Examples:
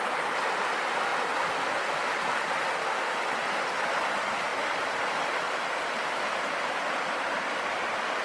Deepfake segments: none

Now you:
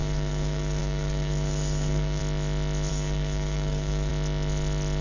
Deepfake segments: 0.0-2.2 (codec, DAC); 2.9-4.1

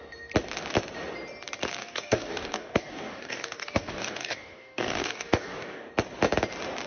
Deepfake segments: 1.8-5.9 (codec, DAC)

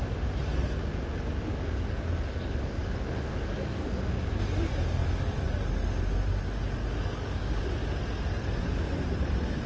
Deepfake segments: 1.3-3.9 (codec, DAC); 6.8-7.6

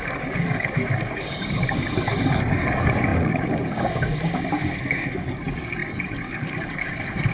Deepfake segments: 0.0-7.3 (codec, DAC)

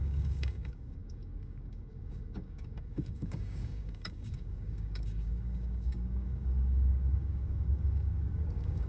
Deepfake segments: 0.0-8.9 (codec, DAC)